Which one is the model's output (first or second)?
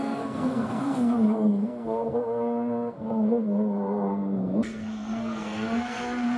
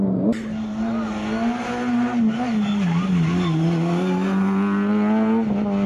first